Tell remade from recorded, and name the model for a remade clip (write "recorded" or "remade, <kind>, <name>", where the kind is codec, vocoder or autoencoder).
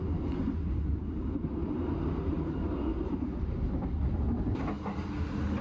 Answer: recorded